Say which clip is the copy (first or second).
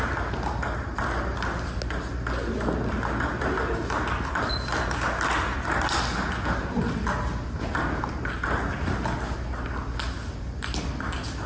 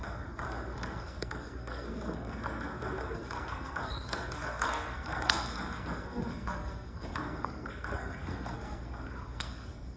second